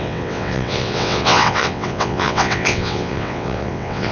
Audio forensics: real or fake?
fake